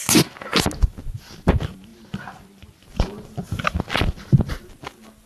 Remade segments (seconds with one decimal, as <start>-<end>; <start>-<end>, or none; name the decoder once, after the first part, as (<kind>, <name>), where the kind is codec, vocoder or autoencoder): none